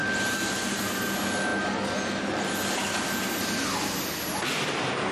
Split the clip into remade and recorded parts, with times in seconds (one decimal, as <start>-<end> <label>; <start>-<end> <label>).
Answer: 0.0-5.1 recorded